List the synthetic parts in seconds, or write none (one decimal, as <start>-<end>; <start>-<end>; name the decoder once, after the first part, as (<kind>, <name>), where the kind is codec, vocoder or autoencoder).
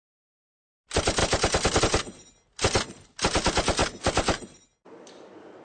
1.2-1.8 (vocoder, BigVGAN v2)